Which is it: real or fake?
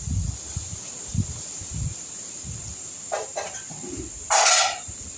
real